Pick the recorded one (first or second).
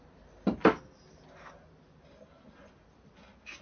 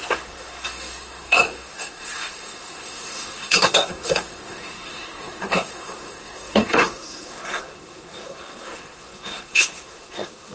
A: first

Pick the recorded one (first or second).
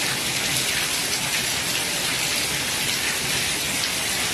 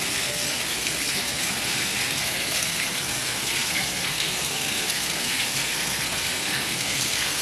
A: first